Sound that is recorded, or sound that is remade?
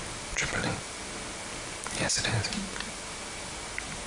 recorded